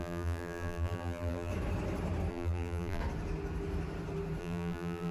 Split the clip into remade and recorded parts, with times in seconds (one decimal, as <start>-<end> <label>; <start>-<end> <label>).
0.0-1.5 remade; 1.5-2.3 recorded; 2.3-3.0 remade; 3.0-4.4 recorded; 4.4-5.1 remade